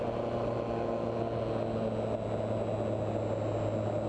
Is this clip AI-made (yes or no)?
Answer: no